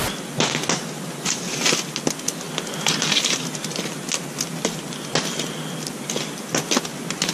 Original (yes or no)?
yes